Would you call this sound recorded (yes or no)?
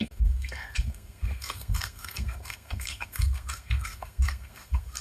no